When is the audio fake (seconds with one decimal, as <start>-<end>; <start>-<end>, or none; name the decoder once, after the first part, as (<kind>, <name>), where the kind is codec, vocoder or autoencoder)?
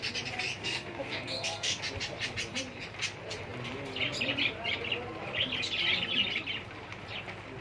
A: 0.6-1.8 (codec, SNAC)